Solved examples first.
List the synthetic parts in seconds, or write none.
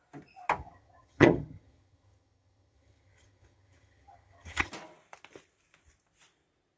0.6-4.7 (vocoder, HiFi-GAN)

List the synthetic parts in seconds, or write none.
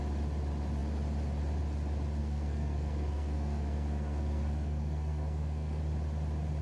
2.2-5.8 (codec, SNAC)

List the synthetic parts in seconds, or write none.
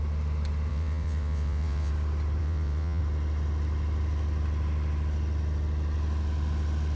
0.7-1.9 (vocoder, WaveNeXt); 2.4-3.0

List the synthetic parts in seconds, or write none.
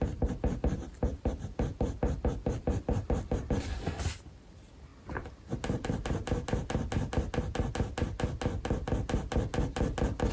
none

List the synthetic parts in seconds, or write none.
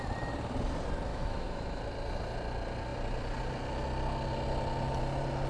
1.1-1.8 (autoencoder, DAC-VAE)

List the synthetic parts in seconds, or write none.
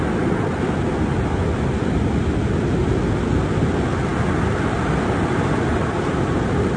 none